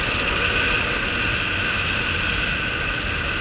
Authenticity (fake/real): real